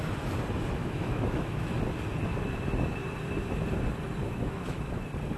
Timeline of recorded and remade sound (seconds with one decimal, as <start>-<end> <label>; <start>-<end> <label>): 0.0-0.8 recorded; 0.8-1.8 remade; 1.8-4.2 recorded; 4.2-5.0 remade; 5.0-5.4 recorded